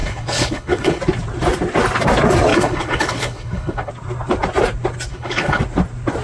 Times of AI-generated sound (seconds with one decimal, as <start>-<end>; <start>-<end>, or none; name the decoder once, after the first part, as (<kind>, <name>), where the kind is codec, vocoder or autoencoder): 0.0-1.0 (codec, HILCodec); 2.5-3.9; 5.1-5.6